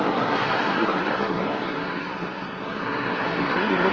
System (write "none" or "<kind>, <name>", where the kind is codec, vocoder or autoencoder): codec, SNAC